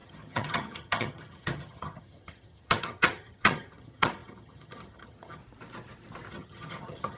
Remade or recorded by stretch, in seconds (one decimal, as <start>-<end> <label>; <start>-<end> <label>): 0.0-5.4 remade; 5.4-6.3 recorded; 6.3-7.2 remade